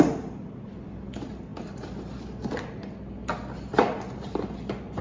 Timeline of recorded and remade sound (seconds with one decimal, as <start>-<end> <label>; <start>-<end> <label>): 0.0-5.0 recorded